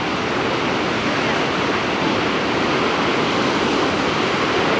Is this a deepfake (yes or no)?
no